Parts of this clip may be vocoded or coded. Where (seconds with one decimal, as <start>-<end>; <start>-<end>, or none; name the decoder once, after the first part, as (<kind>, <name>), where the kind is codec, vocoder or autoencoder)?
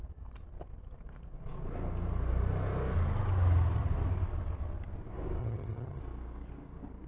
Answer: 5.4-6.0 (vocoder, HiFi-GAN)